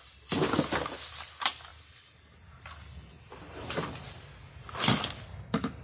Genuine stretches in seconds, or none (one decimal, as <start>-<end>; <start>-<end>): 0.0-5.8